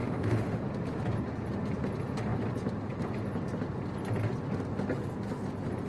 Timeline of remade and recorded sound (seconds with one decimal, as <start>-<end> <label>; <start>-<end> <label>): 0.0-0.6 remade; 0.6-5.9 recorded